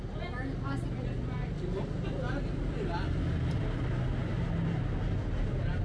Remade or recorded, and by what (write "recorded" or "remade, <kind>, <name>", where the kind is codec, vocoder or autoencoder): recorded